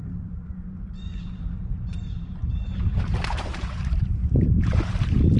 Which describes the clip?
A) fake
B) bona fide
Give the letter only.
A